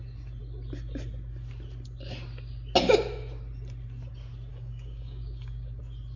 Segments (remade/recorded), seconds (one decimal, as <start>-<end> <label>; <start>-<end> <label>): 0.0-4.5 recorded; 4.5-5.8 remade; 5.8-6.2 recorded